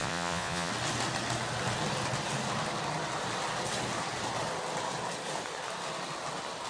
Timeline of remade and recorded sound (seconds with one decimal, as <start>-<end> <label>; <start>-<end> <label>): 0.0-0.7 remade; 0.7-6.7 recorded